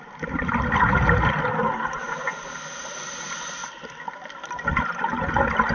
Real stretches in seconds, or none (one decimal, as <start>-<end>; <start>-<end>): 0.0-5.7